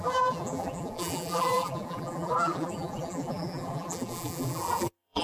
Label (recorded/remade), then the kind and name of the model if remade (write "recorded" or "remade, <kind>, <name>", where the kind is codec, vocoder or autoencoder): remade, vocoder, BigVGAN v2